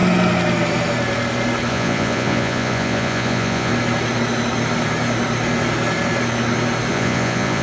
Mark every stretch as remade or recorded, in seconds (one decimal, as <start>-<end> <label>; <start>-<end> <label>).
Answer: 0.0-1.7 recorded; 1.7-3.7 remade; 3.7-6.9 recorded; 6.9-7.6 remade